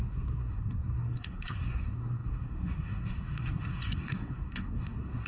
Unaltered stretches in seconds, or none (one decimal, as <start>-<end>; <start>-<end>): none